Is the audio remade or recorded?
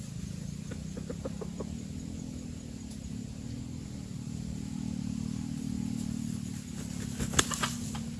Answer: recorded